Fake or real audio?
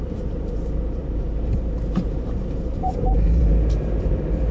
fake